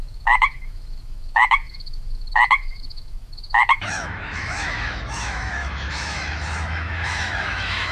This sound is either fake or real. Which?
fake